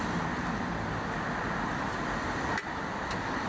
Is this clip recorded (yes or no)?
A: yes